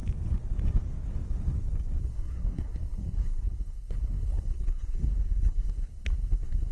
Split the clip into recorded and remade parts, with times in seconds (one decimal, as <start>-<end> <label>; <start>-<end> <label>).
0.0-2.0 recorded; 2.0-6.7 remade